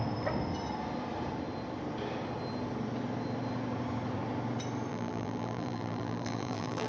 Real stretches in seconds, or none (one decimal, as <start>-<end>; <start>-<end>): 0.0-4.9